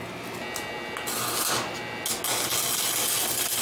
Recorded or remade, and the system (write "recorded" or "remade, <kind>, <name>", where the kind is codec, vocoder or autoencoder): recorded